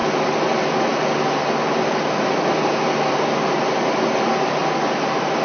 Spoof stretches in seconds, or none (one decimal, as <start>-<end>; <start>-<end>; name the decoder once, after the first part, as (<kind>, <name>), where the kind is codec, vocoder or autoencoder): 0.0-3.2 (vocoder, BigVGAN v2)